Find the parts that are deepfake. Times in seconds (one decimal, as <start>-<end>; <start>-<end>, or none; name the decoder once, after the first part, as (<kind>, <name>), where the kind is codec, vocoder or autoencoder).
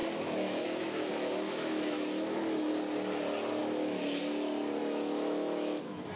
0.0-2.7 (autoencoder, DAC-VAE); 3.6-4.2; 4.8-6.2